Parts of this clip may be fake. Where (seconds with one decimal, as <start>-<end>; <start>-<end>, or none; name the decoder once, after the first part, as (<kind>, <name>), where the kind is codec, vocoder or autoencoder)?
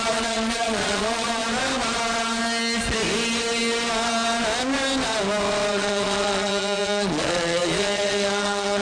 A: 0.0-1.4 (vocoder, Vocos); 5.7-8.8